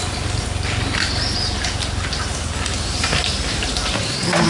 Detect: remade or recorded recorded